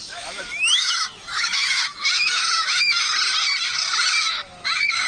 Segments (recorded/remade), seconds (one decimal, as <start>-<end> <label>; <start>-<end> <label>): 0.0-3.1 remade; 3.1-4.2 recorded; 4.2-5.1 remade